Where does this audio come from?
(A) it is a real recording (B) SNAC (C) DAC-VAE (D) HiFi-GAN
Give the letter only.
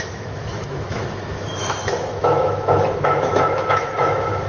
C